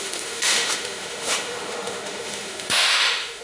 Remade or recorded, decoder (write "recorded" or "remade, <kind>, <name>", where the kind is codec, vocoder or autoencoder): remade, autoencoder, DAC-VAE